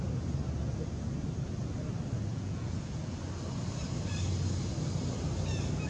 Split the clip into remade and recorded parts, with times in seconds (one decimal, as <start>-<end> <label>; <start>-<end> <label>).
0.0-2.3 recorded; 2.3-3.2 remade; 3.2-5.9 recorded

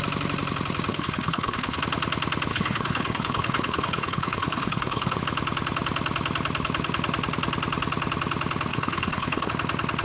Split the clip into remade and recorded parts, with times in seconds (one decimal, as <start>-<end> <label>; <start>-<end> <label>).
0.0-0.9 recorded; 0.9-1.8 remade; 1.8-2.5 recorded; 2.5-5.2 remade; 5.2-8.7 recorded; 8.7-9.5 remade; 9.5-10.0 recorded

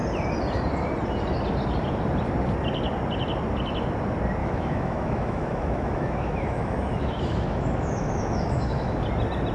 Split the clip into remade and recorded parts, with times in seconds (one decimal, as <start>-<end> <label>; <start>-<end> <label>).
0.0-4.4 recorded; 4.4-9.0 remade; 9.0-9.5 recorded